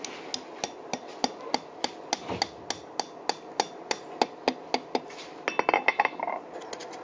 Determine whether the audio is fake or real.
real